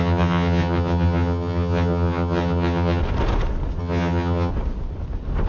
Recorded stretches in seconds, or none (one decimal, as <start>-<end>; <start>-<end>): 3.0-3.8; 4.5-5.5